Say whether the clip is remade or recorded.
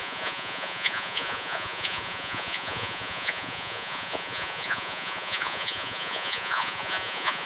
remade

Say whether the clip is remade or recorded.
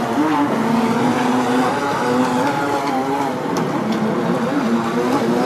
recorded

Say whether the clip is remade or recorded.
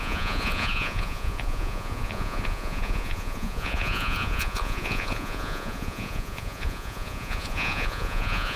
remade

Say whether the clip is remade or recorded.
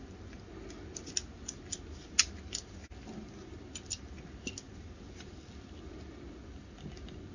recorded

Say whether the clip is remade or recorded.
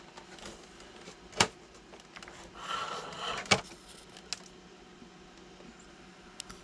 recorded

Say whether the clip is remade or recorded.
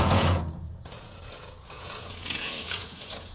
remade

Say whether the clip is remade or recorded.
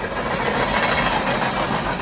recorded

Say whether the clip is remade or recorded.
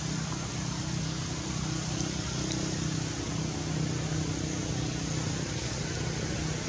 recorded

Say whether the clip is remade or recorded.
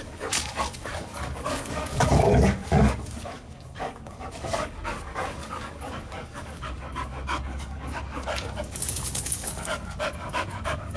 remade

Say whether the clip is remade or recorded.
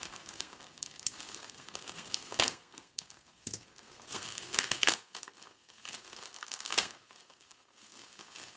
remade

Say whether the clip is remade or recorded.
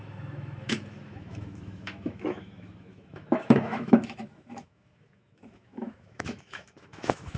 remade